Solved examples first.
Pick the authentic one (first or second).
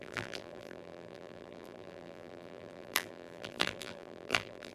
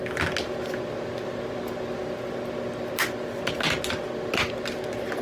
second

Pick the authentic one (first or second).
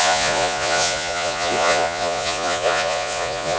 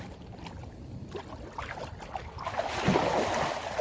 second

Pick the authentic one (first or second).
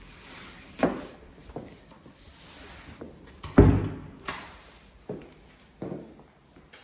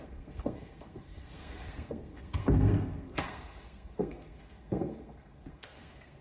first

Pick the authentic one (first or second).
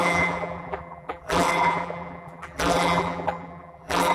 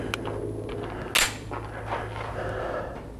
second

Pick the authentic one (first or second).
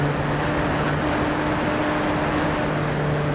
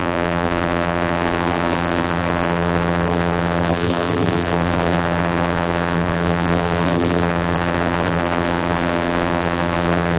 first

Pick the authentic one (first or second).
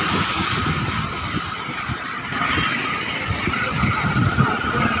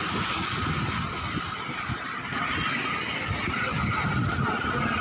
second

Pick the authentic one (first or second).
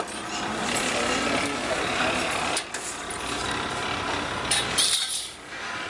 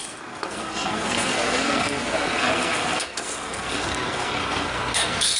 first